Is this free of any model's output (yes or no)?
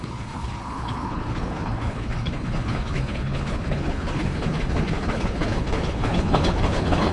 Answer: no